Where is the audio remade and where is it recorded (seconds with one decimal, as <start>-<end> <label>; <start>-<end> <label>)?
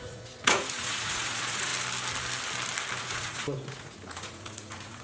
0.0-1.7 remade; 1.7-3.0 recorded; 3.0-5.0 remade